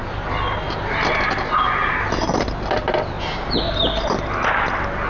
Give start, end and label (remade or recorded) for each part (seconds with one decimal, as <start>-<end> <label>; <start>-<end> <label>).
0.0-5.1 recorded